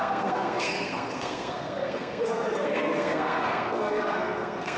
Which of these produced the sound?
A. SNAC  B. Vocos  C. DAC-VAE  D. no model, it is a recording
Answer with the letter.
A